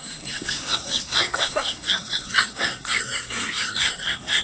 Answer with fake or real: fake